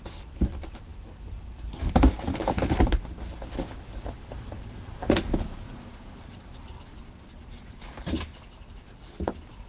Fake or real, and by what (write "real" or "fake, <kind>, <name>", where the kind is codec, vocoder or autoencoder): real